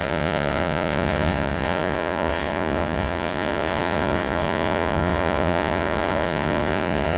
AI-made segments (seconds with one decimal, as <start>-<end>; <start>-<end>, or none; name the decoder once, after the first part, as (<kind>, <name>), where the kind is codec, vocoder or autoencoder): 0.0-7.2 (vocoder, Vocos)